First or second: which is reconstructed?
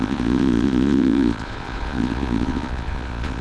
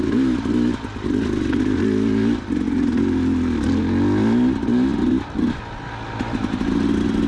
first